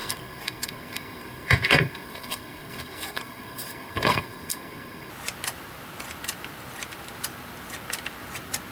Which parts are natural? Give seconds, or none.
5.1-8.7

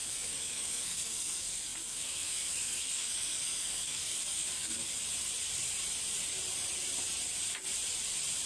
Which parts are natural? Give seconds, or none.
4.9-8.5